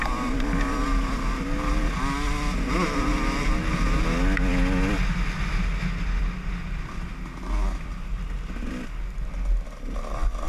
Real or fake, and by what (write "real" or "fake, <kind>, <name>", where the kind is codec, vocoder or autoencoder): real